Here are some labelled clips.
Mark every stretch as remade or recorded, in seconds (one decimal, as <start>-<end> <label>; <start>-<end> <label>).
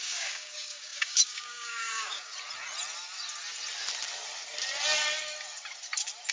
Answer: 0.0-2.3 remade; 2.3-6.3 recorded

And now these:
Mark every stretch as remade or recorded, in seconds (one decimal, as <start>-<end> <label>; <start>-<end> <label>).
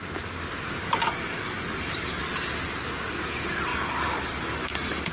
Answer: 0.0-0.8 recorded; 0.8-2.2 remade; 2.2-3.7 recorded; 3.7-5.1 remade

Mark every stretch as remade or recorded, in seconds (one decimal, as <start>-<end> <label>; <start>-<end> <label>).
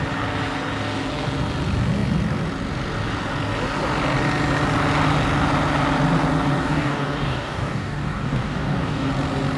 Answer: 0.0-6.6 recorded; 6.6-9.1 remade; 9.1-9.6 recorded